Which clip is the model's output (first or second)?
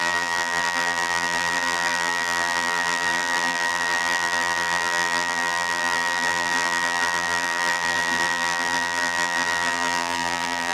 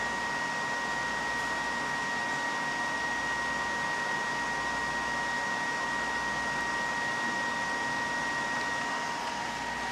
first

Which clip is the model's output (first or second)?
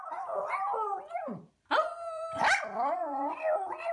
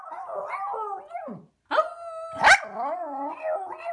first